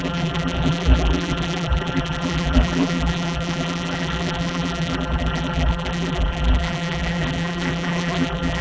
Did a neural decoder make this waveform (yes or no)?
yes